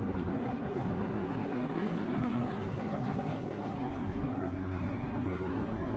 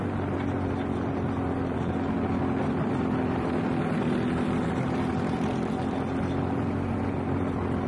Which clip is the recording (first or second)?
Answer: second